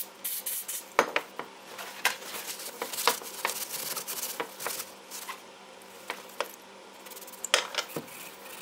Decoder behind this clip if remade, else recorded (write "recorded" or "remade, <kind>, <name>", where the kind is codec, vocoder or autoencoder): recorded